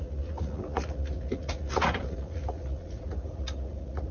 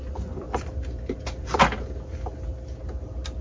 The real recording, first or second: second